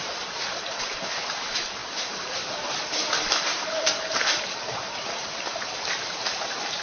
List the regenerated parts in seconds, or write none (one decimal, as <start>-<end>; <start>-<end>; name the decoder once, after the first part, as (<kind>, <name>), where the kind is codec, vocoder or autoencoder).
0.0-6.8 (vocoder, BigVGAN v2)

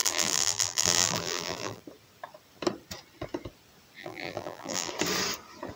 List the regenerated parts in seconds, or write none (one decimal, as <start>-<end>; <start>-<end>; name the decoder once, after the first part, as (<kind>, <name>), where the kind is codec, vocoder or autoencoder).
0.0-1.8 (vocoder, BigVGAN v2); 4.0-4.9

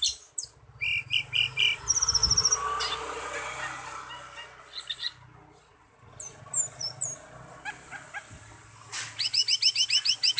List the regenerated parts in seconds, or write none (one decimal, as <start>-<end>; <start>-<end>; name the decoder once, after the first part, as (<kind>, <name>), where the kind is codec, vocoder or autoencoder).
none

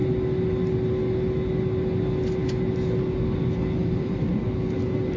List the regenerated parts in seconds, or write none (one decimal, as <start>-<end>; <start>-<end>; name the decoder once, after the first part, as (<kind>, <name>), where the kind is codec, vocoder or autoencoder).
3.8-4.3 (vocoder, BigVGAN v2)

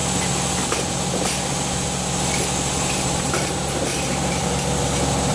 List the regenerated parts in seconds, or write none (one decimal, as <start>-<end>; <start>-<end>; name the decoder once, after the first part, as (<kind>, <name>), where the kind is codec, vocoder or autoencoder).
2.7-4.4 (vocoder, BigVGAN v2)